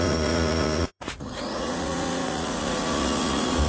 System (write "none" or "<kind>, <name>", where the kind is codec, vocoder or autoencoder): vocoder, Vocos